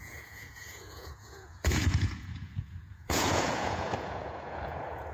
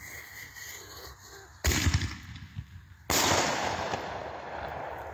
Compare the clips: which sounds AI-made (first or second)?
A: first